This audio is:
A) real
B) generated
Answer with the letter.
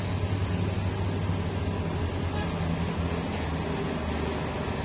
A